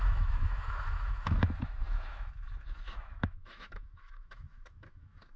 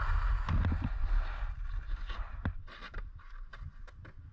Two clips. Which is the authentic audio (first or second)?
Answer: second